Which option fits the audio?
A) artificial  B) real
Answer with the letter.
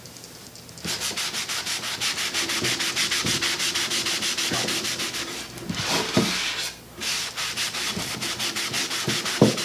B